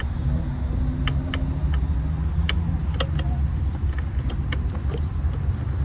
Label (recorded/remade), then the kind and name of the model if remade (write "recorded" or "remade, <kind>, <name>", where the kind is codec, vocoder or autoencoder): recorded